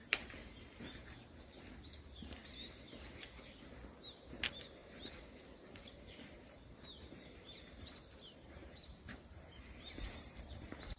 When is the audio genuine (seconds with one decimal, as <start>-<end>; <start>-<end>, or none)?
2.4-4.0

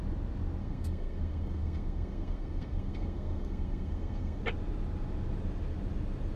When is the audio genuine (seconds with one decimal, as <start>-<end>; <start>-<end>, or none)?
0.0-0.6; 4.4-6.4

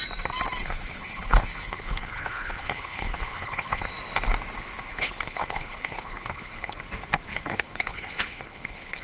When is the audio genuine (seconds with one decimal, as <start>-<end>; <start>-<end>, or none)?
0.0-0.6; 3.9-4.9; 6.8-7.3

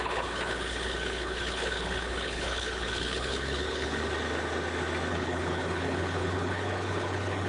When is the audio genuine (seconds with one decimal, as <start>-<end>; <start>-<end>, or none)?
4.0-5.1

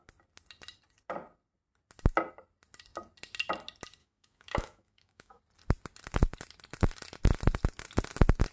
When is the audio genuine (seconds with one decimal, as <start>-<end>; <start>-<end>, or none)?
0.0-4.0; 5.4-8.5